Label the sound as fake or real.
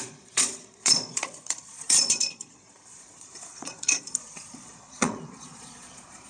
fake